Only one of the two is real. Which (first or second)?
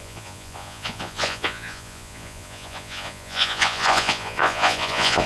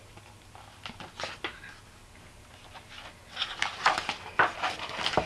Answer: second